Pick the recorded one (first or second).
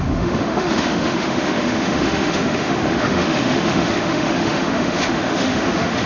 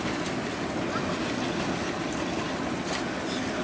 second